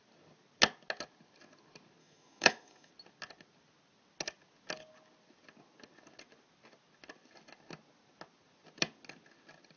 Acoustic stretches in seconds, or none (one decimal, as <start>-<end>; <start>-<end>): 0.0-2.0; 2.9-9.8